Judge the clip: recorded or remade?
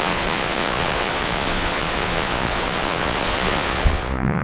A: remade